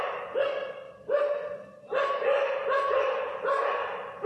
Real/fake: real